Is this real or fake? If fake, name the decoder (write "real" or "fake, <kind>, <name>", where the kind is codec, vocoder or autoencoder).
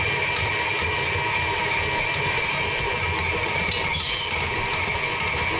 real